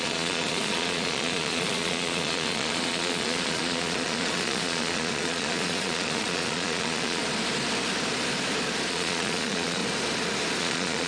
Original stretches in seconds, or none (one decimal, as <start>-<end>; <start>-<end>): 7.2-8.9; 9.8-10.6